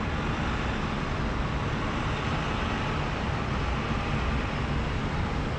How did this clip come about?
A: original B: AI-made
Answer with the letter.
A